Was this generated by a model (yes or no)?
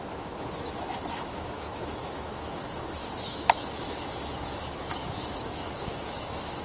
yes